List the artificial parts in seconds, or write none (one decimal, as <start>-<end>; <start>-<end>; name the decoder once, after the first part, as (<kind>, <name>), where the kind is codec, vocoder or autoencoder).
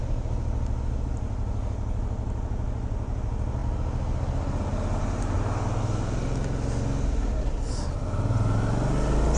none